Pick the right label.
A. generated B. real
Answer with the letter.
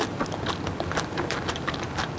B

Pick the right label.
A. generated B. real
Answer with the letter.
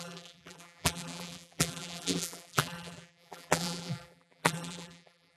A